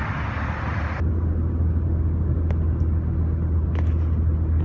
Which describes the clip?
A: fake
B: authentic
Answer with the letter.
B